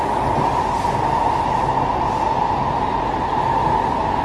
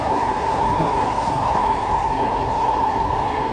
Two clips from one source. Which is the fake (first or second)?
second